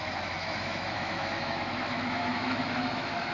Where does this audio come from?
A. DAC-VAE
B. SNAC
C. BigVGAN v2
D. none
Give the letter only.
A